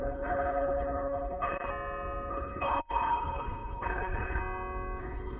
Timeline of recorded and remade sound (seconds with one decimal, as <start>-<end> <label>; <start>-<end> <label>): 0.0-1.7 remade; 1.7-2.3 recorded; 2.3-4.4 remade; 4.4-5.0 recorded; 5.0-5.4 remade